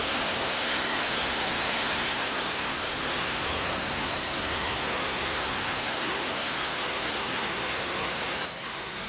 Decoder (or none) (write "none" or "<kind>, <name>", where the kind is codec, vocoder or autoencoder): codec, SNAC